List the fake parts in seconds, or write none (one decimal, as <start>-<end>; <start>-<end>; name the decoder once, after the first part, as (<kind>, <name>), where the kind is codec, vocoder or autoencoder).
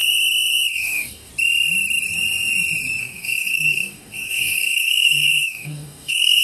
0.7-1.3 (codec, DAC); 3.0-6.4